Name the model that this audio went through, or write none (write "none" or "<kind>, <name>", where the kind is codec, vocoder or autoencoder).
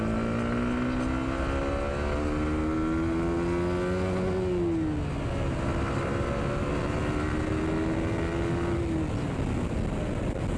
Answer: none